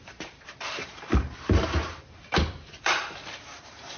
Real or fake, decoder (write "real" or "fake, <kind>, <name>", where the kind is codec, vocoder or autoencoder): fake, vocoder, BigVGAN v2